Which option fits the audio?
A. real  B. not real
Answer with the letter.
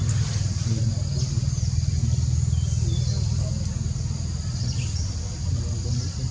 A